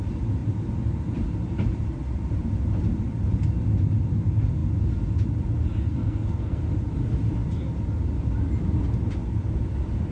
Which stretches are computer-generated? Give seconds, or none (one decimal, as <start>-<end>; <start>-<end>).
5.9-6.6